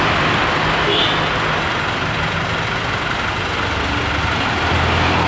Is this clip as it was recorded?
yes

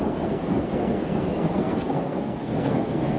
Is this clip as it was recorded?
no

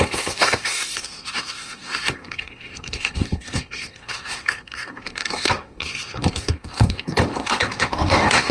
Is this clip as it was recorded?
no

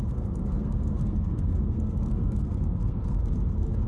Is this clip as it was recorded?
no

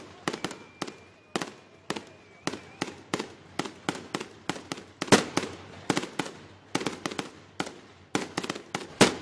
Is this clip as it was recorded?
yes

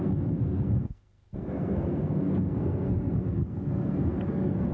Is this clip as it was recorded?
no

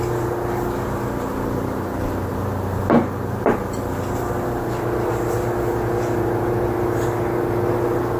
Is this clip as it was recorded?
yes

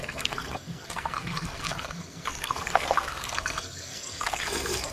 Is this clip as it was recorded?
no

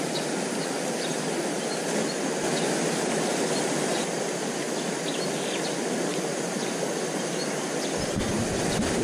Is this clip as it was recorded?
yes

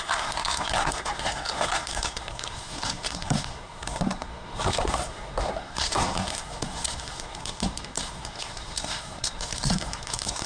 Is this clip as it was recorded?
no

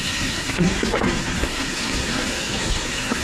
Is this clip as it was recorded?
no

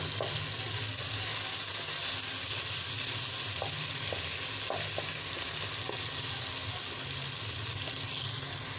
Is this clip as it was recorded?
yes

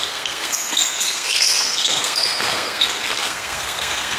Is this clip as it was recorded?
no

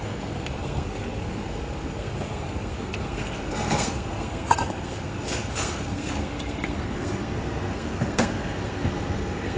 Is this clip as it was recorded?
no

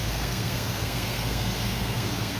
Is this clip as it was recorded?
no